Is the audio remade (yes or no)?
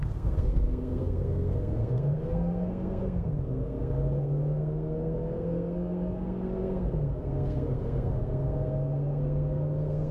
yes